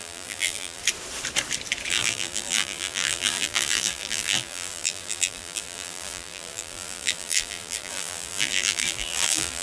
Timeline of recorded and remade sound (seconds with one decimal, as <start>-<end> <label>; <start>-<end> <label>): 0.0-0.8 remade; 0.8-1.9 recorded; 1.9-9.6 remade